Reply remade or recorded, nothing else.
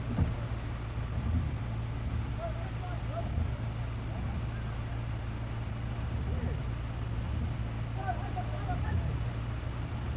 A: recorded